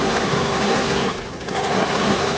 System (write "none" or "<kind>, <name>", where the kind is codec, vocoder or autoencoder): codec, SNAC